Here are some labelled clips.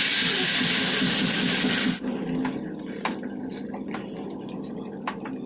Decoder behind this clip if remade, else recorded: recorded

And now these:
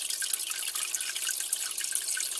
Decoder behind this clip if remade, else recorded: recorded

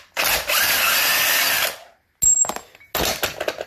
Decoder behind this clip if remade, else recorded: recorded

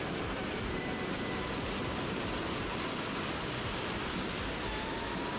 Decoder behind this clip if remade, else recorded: recorded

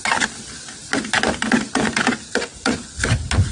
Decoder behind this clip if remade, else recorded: recorded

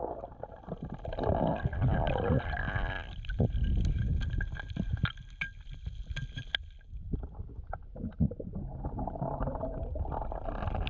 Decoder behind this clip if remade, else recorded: recorded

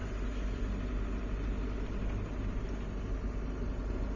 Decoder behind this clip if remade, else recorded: recorded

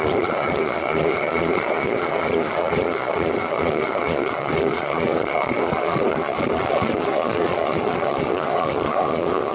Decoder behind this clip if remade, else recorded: remade, vocoder, Vocos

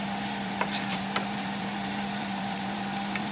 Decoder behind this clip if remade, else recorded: remade, vocoder, BigVGAN v2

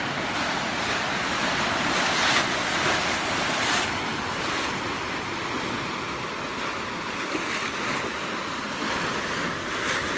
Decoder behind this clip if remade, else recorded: recorded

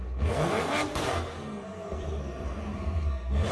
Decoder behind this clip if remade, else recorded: remade, codec, SNAC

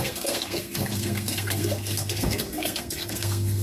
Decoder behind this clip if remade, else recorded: remade, codec, SNAC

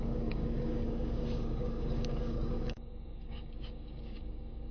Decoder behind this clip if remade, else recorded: remade, codec, DAC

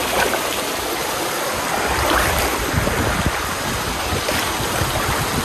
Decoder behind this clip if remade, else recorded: remade, vocoder, BigVGAN v2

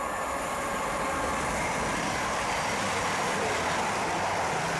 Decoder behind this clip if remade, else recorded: remade, vocoder, BigVGAN v2